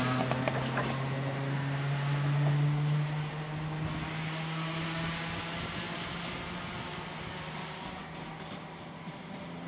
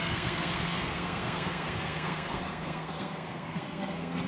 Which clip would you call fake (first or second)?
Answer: second